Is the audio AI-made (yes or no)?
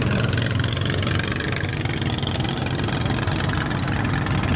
no